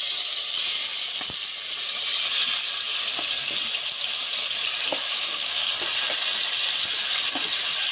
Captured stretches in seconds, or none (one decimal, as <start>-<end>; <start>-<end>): 0.0-5.0; 5.7-7.9